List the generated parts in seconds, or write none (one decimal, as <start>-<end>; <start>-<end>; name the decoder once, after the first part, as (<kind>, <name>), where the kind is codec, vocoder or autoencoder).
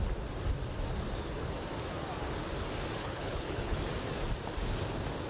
3.0-3.8 (codec, HILCodec)